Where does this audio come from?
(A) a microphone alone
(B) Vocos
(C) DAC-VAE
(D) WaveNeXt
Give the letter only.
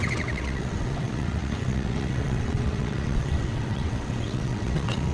D